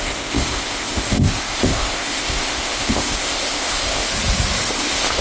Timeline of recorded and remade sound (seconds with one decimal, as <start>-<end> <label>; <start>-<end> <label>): 0.0-4.1 remade; 4.1-4.7 recorded; 4.7-5.2 remade